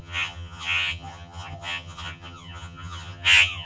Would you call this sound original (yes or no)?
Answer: no